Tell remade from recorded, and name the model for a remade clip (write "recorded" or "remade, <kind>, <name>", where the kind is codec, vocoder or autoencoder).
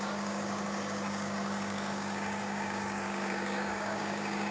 remade, codec, DAC